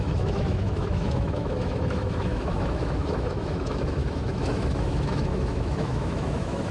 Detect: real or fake fake